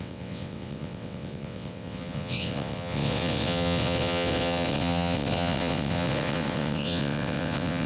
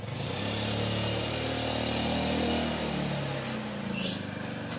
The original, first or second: second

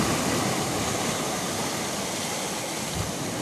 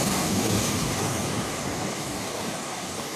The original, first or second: first